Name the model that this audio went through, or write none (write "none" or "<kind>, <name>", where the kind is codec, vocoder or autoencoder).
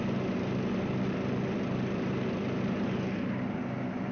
none